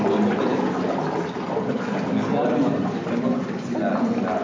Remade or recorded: recorded